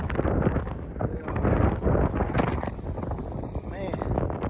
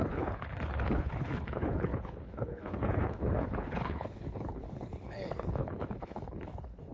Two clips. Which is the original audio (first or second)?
first